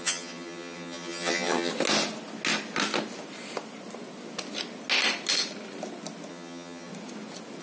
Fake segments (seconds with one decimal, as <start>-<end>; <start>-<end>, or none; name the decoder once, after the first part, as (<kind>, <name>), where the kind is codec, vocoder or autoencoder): 0.0-1.7 (vocoder, HiFi-GAN); 6.3-6.9